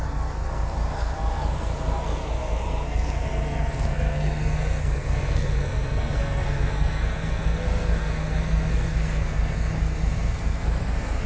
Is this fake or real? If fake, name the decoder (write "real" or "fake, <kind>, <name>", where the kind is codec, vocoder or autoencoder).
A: fake, codec, SNAC